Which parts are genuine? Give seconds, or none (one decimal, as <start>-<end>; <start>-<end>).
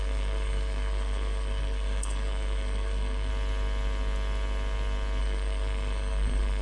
3.3-5.2